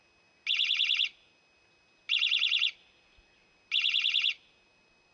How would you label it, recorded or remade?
recorded